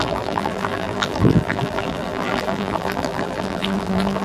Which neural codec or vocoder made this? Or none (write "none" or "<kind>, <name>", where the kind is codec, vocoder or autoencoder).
vocoder, BigVGAN v2